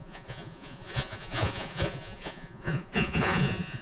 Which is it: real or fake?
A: fake